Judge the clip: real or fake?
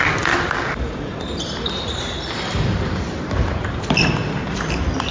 fake